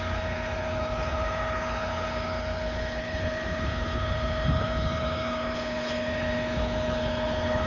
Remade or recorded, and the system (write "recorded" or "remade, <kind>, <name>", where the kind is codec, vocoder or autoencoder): remade, codec, HILCodec